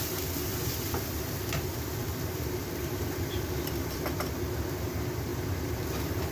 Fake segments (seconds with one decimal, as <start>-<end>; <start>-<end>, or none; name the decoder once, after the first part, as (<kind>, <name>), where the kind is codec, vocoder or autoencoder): 0.5-4.3 (vocoder, BigVGAN v2)